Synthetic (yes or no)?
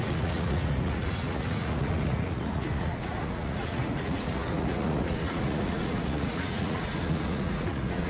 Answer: yes